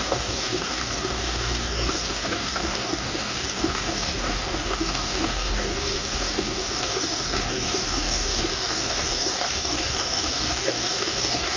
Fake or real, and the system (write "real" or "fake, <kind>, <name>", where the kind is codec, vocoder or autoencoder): fake, codec, DAC